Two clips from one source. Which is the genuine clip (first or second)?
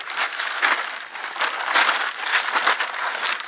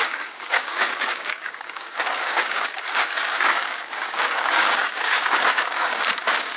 first